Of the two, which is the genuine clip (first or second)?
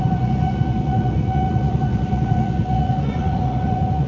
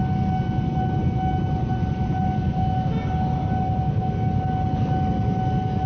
second